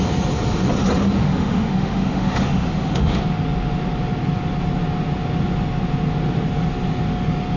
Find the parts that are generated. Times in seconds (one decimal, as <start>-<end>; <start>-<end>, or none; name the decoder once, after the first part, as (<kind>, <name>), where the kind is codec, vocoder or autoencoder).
1.2-3.2 (autoencoder, DAC-VAE)